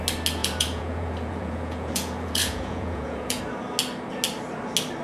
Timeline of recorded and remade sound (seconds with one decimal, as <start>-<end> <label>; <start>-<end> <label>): 0.0-0.4 recorded; 0.4-3.4 remade; 3.4-5.0 recorded